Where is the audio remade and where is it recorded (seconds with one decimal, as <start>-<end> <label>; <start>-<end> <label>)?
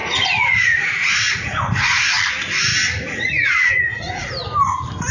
0.0-2.0 remade; 2.0-2.7 recorded; 2.7-4.3 remade; 4.3-5.1 recorded